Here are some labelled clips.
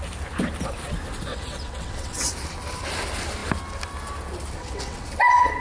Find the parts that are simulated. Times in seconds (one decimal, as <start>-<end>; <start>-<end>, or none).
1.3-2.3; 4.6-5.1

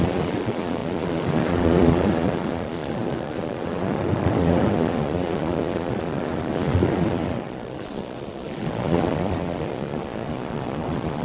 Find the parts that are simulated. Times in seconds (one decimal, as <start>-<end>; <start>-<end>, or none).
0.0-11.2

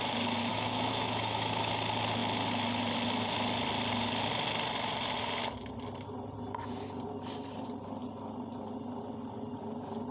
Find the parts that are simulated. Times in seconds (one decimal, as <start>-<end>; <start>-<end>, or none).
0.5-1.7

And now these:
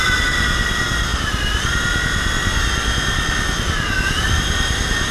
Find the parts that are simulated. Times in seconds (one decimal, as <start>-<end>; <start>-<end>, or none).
none

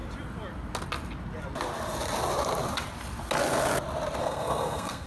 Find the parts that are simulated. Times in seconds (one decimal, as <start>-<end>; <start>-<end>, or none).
4.2-5.1

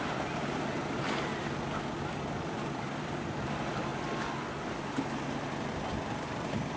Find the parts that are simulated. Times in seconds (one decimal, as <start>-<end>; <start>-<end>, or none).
0.0-1.3; 2.1-3.9; 5.7-6.8